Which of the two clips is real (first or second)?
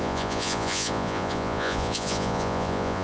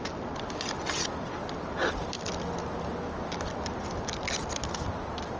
second